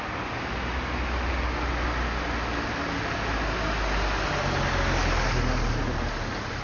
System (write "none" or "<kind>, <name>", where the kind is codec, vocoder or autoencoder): none